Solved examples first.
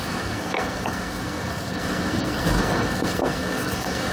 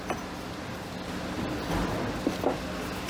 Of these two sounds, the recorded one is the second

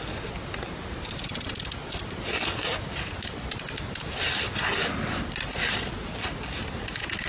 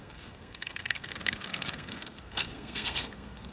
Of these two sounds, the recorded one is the first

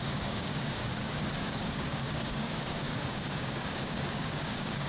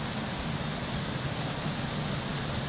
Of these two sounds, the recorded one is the second